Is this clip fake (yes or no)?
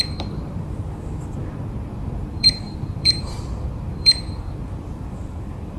yes